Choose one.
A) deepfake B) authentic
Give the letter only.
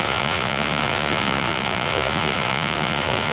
A